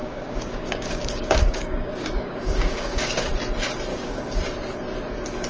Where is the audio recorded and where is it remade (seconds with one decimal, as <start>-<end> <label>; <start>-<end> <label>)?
0.0-3.3 remade; 3.3-3.9 recorded; 3.9-4.4 remade; 4.4-5.5 recorded